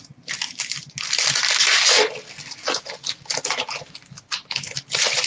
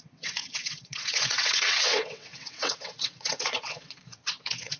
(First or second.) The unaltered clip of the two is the first